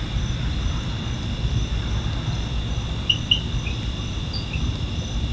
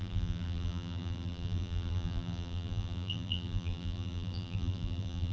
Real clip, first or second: first